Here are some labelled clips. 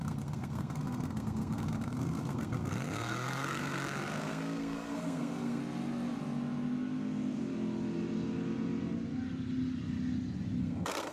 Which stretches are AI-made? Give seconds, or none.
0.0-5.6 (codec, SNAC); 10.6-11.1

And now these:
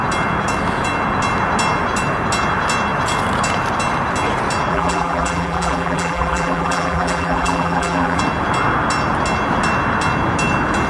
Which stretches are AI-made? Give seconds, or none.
4.7-8.2 (vocoder, BigVGAN v2)

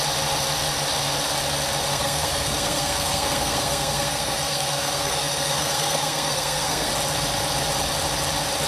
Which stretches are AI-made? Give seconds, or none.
1.9-6.9 (codec, SNAC)

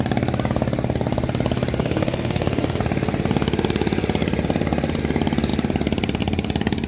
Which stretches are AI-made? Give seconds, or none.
1.8-2.8 (codec, SNAC)

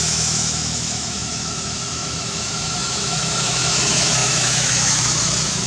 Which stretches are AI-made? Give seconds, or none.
0.0-5.7 (autoencoder, DAC-VAE)

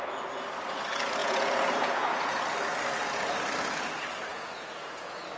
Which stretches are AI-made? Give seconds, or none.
1.2-2.4 (vocoder, Vocos); 4.3-5.4

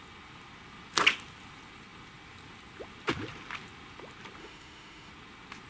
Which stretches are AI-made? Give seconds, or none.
4.4-5.1 (autoencoder, DAC-VAE)

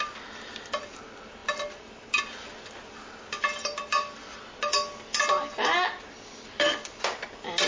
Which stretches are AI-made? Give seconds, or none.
none